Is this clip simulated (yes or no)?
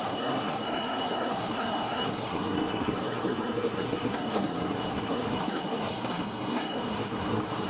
yes